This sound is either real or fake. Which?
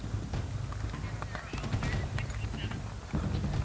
real